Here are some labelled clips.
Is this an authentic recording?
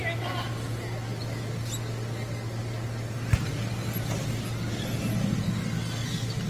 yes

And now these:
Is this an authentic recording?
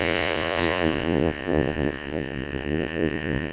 no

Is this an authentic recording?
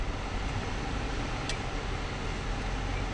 yes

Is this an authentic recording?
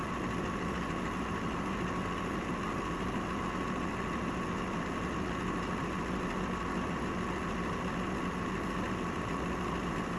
yes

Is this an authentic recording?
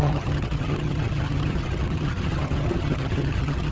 no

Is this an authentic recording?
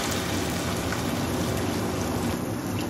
yes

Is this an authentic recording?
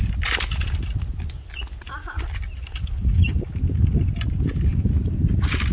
yes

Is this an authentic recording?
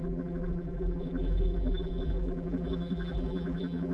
no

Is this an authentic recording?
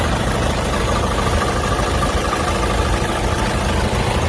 yes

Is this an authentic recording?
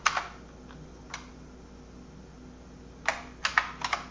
yes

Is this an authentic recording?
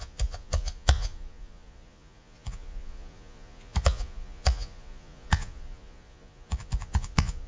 no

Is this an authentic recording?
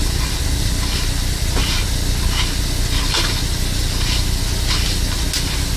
yes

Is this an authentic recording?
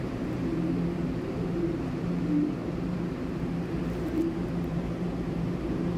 no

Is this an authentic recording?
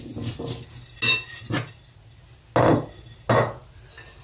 yes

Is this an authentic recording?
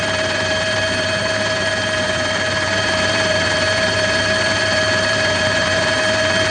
no